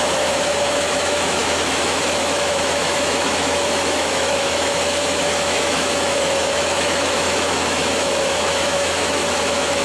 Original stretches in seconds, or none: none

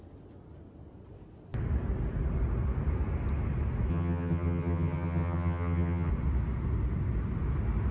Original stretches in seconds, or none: 0.0-3.9; 6.1-7.9

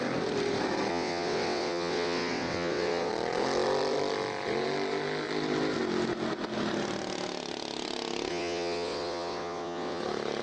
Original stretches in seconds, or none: 0.0-0.9; 3.1-8.3; 10.0-10.4

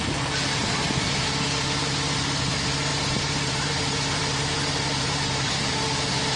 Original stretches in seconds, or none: 0.0-0.5; 1.1-2.9; 5.7-6.4

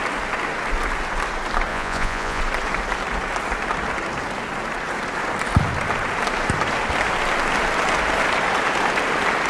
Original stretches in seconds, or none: 0.0-1.7; 2.4-9.5